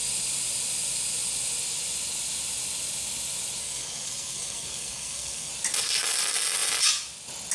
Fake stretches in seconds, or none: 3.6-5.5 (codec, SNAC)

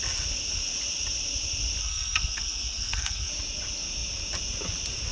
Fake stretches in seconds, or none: 1.8-3.3 (codec, SNAC)